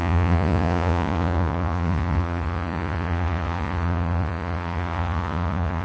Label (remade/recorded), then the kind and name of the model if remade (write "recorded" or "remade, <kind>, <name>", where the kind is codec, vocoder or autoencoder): remade, vocoder, Vocos